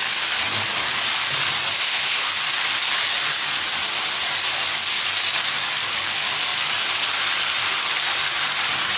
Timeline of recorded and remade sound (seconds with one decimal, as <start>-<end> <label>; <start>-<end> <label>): 0.0-1.8 recorded; 1.8-2.3 remade; 2.3-9.0 recorded